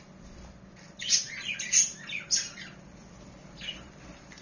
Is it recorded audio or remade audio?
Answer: remade